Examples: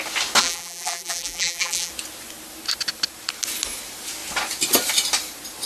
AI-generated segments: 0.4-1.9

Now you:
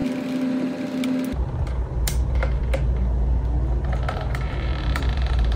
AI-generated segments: 1.3-2.6; 4.1-5.6

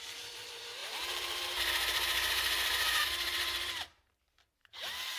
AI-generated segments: 0.0-5.2

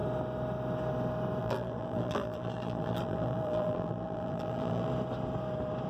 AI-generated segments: 1.4-4.9

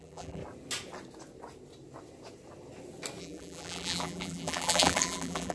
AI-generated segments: 0.0-0.4; 3.2-5.5

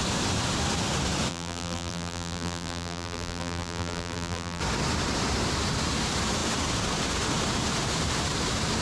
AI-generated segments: 1.3-4.6

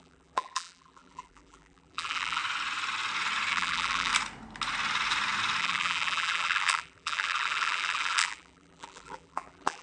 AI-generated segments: 0.0-2.4; 3.5-4.1; 5.6-9.8

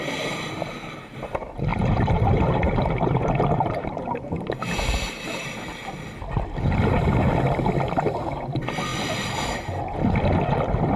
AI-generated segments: 1.7-4.4